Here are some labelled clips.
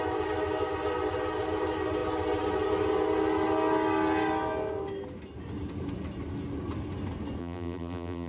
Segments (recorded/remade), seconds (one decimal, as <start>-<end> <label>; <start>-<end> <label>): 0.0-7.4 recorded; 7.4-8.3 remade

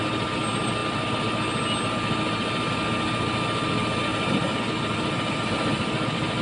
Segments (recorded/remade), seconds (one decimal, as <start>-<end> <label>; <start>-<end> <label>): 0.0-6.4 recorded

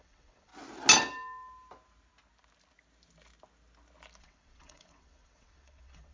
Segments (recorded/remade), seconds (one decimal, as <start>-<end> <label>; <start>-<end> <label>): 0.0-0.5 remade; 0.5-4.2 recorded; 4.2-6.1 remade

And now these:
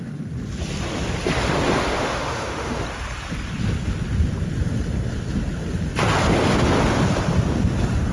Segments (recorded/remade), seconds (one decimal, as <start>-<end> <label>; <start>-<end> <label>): 0.0-1.9 recorded; 1.9-2.8 remade; 2.8-8.1 recorded

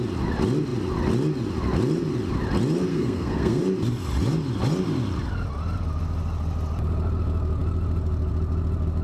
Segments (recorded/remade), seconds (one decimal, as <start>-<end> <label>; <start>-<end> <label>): 0.0-2.9 recorded; 2.9-3.6 remade; 3.6-9.0 recorded